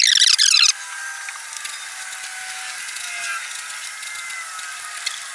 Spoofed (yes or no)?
no